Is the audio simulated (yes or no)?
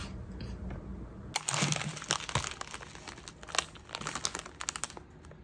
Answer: no